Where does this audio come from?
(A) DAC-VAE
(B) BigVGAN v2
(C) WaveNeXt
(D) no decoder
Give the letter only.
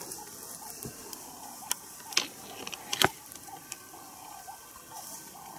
D